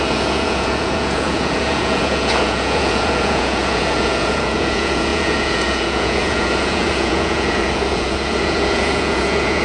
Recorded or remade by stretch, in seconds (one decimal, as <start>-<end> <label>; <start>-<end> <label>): 0.0-9.6 remade